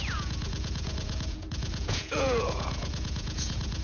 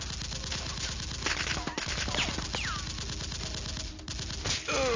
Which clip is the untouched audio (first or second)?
second